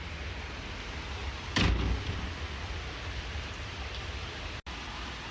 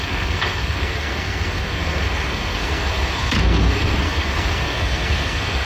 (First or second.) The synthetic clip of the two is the second